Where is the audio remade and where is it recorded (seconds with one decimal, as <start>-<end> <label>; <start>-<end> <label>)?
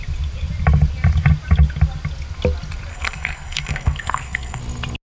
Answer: 0.0-2.9 recorded; 2.9-4.6 remade; 4.6-5.1 recorded